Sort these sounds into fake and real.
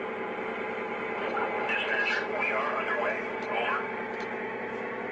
real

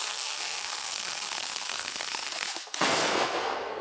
fake